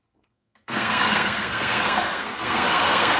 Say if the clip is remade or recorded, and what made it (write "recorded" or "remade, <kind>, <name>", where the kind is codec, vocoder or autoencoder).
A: remade, codec, SNAC